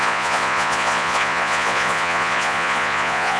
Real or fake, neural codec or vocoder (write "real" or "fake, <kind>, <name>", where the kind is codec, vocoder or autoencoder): fake, vocoder, Vocos